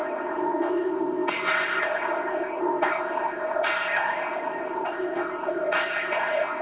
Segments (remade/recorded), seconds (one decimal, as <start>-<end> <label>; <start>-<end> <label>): 0.0-6.6 remade